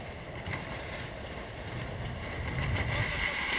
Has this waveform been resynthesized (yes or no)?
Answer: no